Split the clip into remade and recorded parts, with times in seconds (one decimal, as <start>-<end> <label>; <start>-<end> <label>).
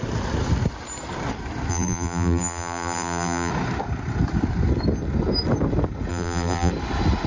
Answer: 0.0-1.7 recorded; 1.7-3.5 remade; 3.5-6.1 recorded; 6.1-6.7 remade; 6.7-7.3 recorded